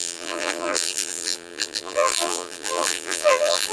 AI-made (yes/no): yes